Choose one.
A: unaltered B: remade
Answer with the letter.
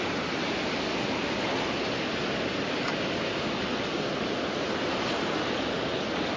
A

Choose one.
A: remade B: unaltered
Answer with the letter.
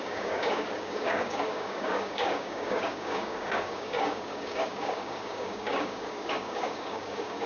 A